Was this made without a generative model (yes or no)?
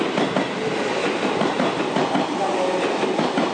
yes